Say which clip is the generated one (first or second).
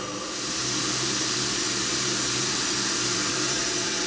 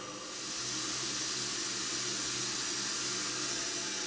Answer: first